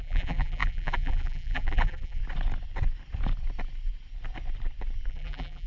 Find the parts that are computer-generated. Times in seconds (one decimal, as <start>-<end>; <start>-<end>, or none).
0.0-2.2; 5.1-5.7